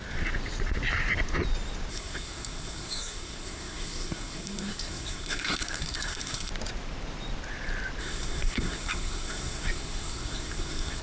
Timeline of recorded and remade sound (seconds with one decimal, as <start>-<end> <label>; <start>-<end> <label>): 0.0-1.9 recorded; 1.9-6.5 remade; 6.5-8.0 recorded; 8.0-11.0 remade